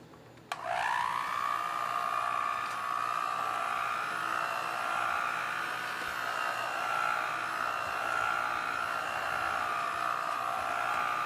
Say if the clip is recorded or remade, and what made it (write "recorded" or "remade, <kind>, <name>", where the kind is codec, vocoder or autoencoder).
recorded